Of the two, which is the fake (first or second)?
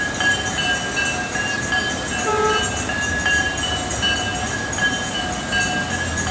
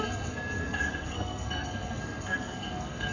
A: second